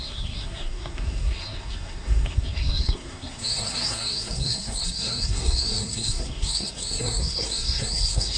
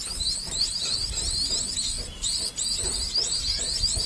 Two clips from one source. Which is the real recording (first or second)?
second